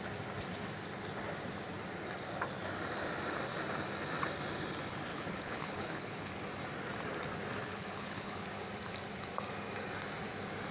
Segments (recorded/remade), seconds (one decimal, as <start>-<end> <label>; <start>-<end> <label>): 0.0-5.1 recorded; 5.1-6.3 remade; 6.3-7.6 recorded; 7.6-8.4 remade; 8.4-10.7 recorded